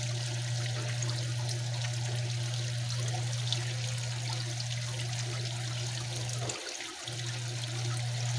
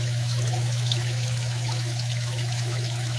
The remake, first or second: second